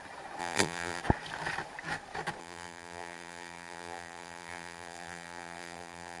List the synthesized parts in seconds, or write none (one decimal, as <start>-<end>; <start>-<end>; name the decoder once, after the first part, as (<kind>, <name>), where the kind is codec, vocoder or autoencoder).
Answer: 0.4-1.0 (vocoder, BigVGAN v2); 2.4-6.2